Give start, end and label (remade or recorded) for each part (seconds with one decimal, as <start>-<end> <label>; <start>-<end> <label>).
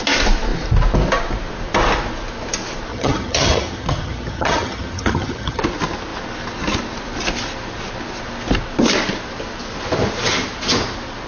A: 0.0-2.9 recorded; 2.9-5.6 remade; 5.6-11.3 recorded